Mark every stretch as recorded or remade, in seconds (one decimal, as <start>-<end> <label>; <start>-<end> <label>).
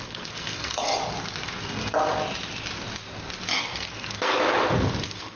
0.0-0.9 remade; 0.9-3.6 recorded; 3.6-4.3 remade; 4.3-5.0 recorded; 5.0-5.4 remade